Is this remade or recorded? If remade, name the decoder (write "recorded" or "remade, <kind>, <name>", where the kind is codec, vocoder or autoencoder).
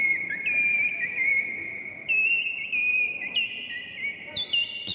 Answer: remade, vocoder, BigVGAN v2